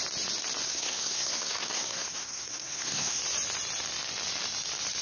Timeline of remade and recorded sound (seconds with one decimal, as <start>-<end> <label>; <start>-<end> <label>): 0.0-0.6 recorded; 0.6-3.2 remade; 3.2-5.0 recorded